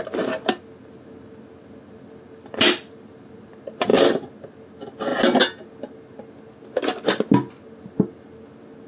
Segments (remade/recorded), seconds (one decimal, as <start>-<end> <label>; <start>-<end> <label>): 0.0-8.9 recorded